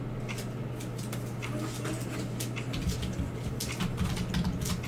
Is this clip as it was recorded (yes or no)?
yes